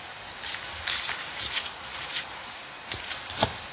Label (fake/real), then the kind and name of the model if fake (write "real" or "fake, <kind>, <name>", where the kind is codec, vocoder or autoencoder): real